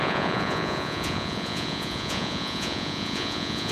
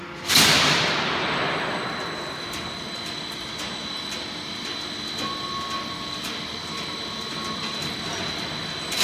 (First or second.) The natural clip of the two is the second